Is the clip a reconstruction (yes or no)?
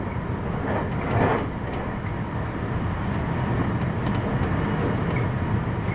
no